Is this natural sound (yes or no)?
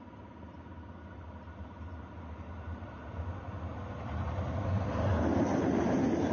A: yes